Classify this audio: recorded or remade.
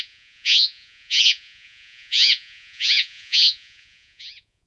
remade